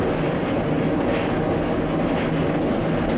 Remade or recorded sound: recorded